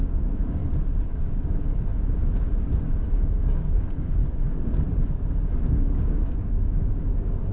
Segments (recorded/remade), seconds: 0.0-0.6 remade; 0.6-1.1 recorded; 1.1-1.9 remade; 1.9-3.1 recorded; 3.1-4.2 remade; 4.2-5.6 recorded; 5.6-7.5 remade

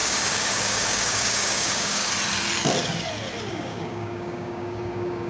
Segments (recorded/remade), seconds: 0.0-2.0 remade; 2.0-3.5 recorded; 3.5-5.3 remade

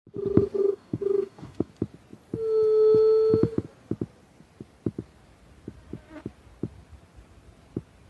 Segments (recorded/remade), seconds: 0.0-0.6 recorded; 0.6-1.7 remade; 1.7-8.1 recorded

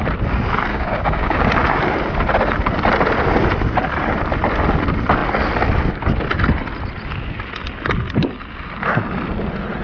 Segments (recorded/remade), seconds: 0.0-0.7 recorded; 0.7-1.5 remade; 1.5-9.8 recorded

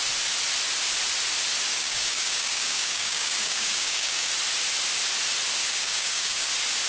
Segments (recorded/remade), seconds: 0.0-1.7 recorded; 1.7-4.3 remade; 4.3-5.6 recorded; 5.6-6.5 remade; 6.5-6.9 recorded

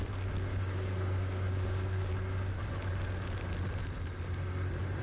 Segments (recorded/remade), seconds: 0.0-0.5 recorded; 0.5-2.1 remade; 2.1-5.0 recorded

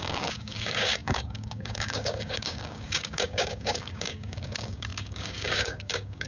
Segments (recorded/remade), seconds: 0.0-6.3 remade